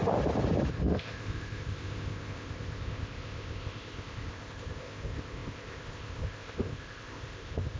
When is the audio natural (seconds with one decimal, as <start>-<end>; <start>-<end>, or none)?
0.0-0.7